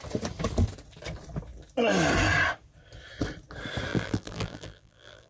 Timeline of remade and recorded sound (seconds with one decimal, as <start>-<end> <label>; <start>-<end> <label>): 0.0-3.9 recorded; 3.9-5.3 remade